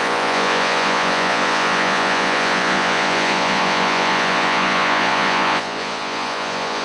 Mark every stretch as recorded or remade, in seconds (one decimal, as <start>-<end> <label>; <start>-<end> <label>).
0.0-6.8 remade